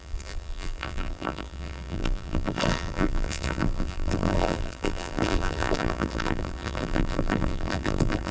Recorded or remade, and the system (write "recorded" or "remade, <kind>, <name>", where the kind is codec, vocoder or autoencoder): remade, vocoder, BigVGAN v2